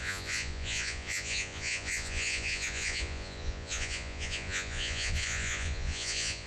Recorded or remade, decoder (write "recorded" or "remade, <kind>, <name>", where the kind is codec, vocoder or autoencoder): remade, vocoder, Vocos